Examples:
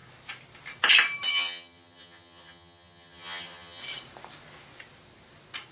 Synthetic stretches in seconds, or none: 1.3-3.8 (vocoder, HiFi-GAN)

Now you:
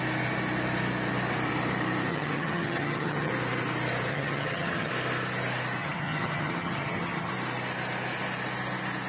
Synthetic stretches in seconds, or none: 2.1-3.3 (vocoder, HiFi-GAN); 4.1-4.9; 5.8-7.3

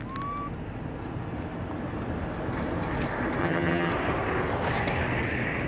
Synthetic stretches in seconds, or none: 3.4-3.9 (vocoder, HiFi-GAN)

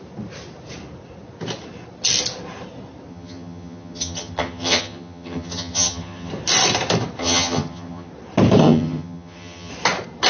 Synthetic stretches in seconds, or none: 3.1-6.3 (vocoder, HiFi-GAN); 7.2-8.1; 8.6-9.7